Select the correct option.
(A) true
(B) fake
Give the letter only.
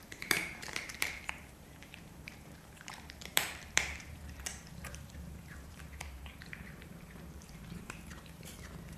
B